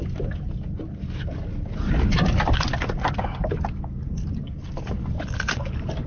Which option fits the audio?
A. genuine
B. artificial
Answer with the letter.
A